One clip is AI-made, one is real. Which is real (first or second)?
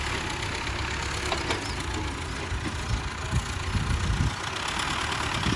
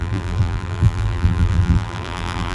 first